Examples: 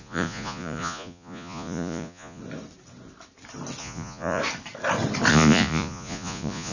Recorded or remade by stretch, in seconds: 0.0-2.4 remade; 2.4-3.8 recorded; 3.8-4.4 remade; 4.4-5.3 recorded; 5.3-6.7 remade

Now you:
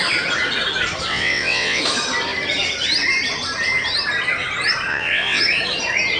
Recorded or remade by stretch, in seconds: 0.0-1.1 recorded; 1.1-1.8 remade; 1.8-4.9 recorded; 4.9-5.4 remade; 5.4-6.2 recorded

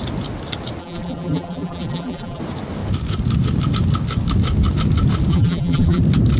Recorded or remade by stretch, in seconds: 0.0-0.8 recorded; 0.8-2.4 remade; 2.4-5.3 recorded; 5.3-6.0 remade; 6.0-6.4 recorded